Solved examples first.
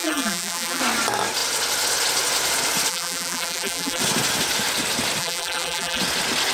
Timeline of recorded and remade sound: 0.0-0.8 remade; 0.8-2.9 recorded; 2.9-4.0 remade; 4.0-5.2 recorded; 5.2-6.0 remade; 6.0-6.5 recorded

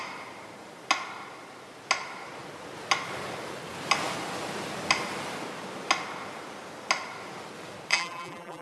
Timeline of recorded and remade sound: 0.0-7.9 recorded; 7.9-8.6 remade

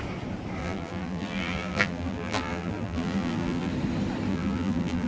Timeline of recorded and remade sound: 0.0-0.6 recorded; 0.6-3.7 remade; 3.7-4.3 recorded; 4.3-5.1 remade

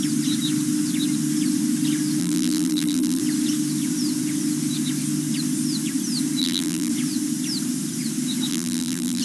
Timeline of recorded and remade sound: 0.0-2.2 recorded; 2.2-3.2 remade; 3.2-6.4 recorded; 6.4-6.9 remade; 6.9-8.5 recorded; 8.5-9.2 remade

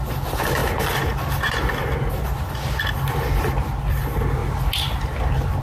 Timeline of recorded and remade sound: 0.0-5.6 recorded

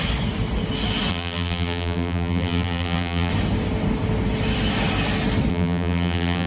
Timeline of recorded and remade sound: 0.0-1.1 recorded; 1.1-3.3 remade; 3.3-5.5 recorded; 5.5-6.5 remade